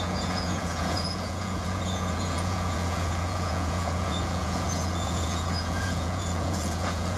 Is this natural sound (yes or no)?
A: no